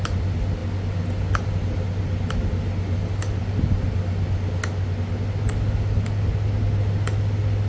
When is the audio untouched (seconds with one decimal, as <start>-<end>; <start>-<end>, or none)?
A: 0.0-7.7